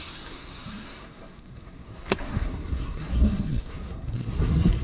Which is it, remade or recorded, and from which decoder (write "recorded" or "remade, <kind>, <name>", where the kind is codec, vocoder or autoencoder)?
remade, codec, SNAC